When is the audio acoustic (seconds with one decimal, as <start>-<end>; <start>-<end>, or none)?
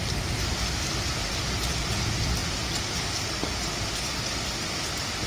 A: 0.0-5.3